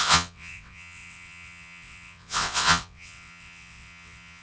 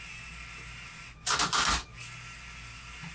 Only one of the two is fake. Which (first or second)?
first